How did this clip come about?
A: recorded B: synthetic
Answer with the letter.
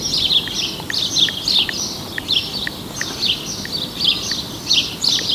A